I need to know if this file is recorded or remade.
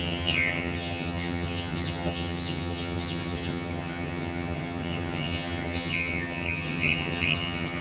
remade